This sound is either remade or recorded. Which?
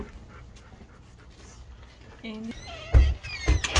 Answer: recorded